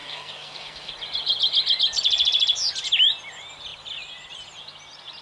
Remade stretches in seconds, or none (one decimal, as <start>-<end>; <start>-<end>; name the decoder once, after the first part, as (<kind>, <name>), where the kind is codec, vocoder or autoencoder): 0.0-0.9 (codec, SNAC)